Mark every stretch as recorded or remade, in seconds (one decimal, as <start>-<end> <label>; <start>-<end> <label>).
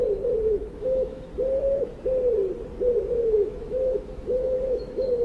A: 0.0-0.5 recorded; 0.5-1.3 remade; 1.3-3.1 recorded; 3.1-5.2 remade